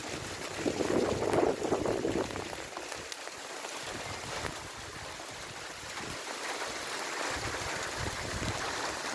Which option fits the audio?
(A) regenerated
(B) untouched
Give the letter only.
B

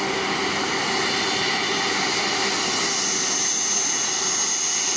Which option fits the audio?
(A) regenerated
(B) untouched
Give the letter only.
B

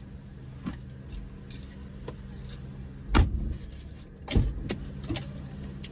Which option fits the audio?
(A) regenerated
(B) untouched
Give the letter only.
B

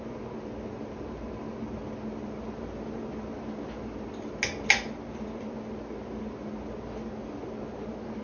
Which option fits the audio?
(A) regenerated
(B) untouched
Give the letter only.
B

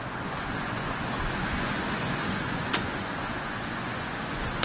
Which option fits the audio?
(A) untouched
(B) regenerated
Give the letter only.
B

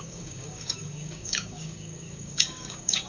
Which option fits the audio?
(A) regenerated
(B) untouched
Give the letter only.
A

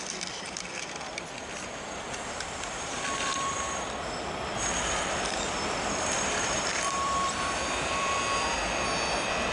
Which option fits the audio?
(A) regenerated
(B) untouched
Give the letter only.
A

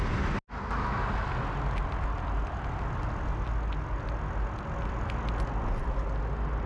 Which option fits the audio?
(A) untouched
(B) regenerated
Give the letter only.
A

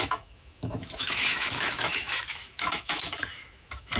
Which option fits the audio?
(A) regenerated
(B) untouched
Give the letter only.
A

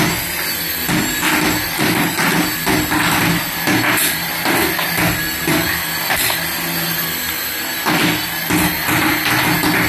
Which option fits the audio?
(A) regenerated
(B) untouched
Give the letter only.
B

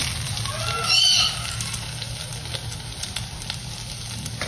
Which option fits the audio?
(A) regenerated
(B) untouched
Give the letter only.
B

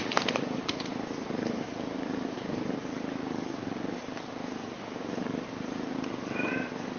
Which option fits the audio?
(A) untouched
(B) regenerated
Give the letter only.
A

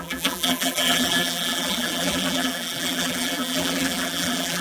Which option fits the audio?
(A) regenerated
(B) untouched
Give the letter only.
A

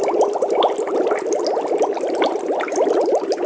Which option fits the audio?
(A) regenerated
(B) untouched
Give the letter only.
B